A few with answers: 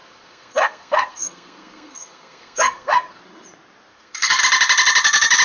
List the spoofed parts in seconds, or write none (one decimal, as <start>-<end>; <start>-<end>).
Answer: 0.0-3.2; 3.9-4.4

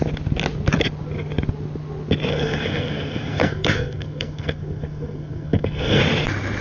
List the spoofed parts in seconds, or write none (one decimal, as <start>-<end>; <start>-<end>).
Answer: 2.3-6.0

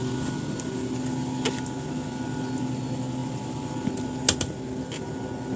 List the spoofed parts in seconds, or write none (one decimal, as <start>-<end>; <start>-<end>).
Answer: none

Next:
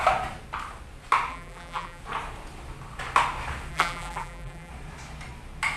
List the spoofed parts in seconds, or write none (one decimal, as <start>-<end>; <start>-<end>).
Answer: 1.3-2.0; 3.7-4.7

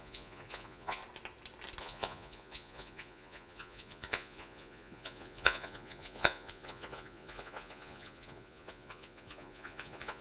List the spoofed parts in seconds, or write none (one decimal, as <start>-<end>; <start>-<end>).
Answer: 0.0-1.0; 1.8-10.2

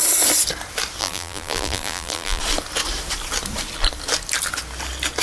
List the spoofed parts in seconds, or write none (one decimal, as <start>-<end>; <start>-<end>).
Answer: 1.0-2.4

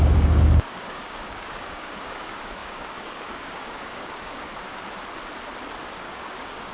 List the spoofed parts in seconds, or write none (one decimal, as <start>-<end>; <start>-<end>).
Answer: 0.0-4.5; 6.1-6.7

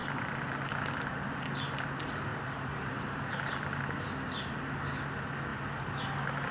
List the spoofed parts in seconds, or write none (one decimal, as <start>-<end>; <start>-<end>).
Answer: 0.0-0.9; 2.3-3.8; 5.5-6.0